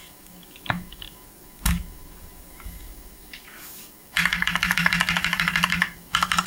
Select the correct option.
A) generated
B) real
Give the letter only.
A